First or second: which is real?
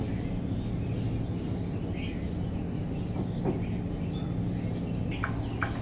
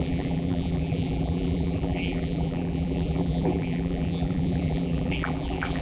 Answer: first